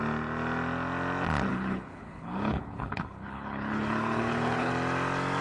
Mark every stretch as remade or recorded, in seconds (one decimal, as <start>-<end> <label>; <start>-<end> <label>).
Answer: 0.0-1.5 recorded; 1.5-4.7 remade; 4.7-5.4 recorded